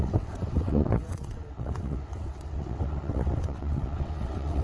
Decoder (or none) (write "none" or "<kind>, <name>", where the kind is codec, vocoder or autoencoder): vocoder, WaveNeXt